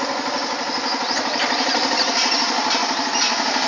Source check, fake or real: real